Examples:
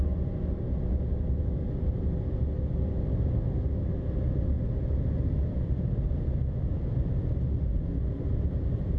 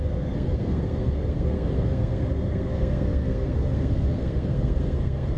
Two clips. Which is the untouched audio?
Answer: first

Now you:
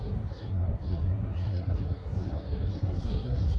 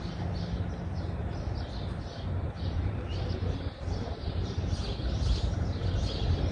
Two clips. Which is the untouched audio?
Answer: second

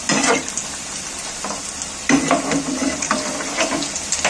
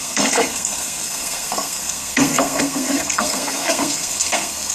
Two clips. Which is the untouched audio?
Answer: first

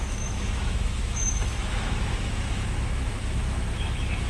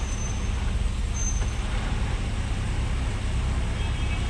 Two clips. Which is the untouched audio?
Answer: second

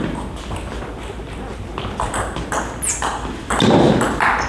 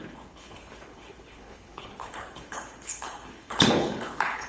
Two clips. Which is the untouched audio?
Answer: first